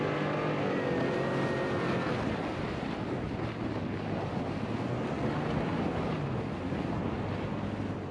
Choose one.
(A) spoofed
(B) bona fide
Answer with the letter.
B